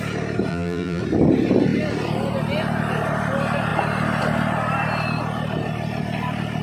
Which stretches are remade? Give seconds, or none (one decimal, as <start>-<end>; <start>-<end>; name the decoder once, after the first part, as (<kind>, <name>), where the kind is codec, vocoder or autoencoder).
0.5-1.0 (vocoder, BigVGAN v2)